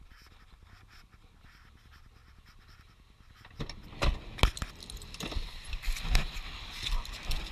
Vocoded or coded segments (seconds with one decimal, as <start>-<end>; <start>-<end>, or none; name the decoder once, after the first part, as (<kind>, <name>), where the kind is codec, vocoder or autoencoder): none